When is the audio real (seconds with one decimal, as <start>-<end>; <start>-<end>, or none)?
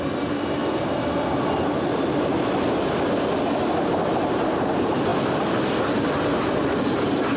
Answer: 0.0-7.4